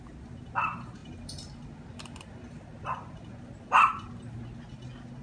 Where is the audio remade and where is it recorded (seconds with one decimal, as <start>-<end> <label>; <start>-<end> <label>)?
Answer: 0.0-5.2 recorded